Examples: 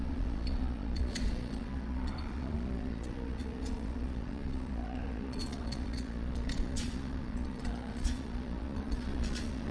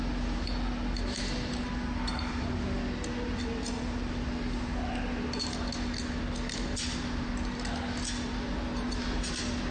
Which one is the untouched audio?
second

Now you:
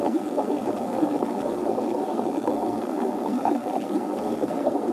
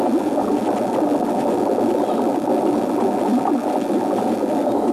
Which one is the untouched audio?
second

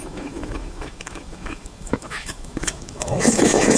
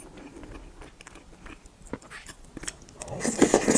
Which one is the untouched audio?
second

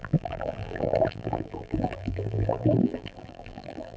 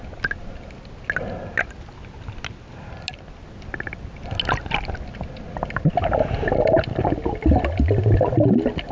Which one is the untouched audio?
second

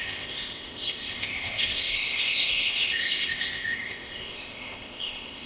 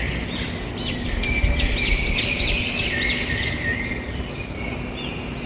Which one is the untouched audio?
second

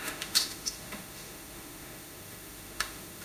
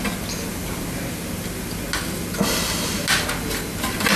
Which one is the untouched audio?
second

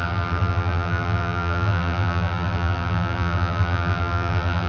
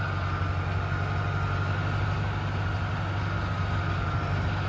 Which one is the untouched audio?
second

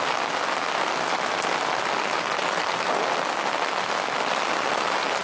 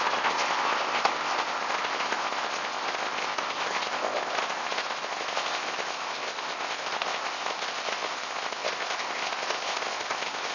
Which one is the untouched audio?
first